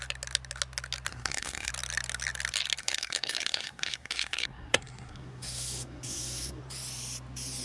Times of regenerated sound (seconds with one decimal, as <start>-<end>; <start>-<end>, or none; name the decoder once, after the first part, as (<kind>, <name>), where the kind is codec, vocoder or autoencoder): 1.1-1.7 (codec, SNAC); 2.8-6.6